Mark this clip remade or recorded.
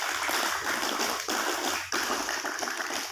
recorded